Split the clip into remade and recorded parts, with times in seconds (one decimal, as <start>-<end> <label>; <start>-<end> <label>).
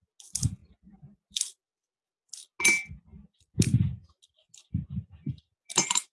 0.0-6.1 recorded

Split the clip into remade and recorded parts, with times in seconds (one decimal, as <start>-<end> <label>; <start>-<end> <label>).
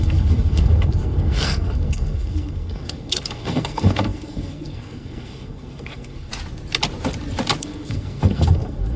0.0-6.3 remade; 6.3-7.6 recorded; 7.6-9.0 remade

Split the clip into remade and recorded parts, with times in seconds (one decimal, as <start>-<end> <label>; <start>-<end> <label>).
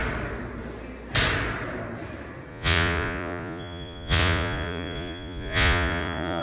0.0-2.5 recorded; 2.5-6.4 remade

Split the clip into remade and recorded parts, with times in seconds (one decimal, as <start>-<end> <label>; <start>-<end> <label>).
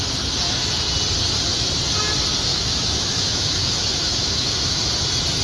0.0-2.5 recorded; 2.5-4.8 remade; 4.8-5.4 recorded